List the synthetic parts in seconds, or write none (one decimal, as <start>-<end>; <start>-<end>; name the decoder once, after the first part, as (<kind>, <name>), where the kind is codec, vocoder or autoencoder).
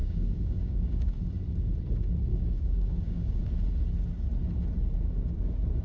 0.0-1.1 (codec, DAC); 2.3-3.4